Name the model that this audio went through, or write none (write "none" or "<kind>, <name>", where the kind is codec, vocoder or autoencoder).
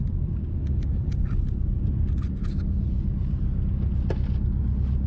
none